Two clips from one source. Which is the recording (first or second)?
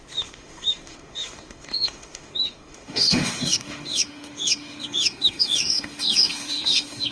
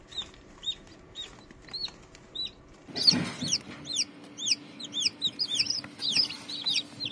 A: second